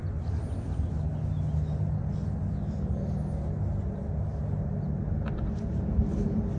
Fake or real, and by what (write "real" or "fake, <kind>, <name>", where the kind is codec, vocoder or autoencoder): real